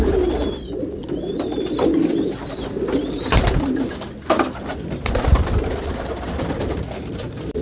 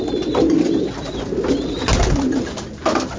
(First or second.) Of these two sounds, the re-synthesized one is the first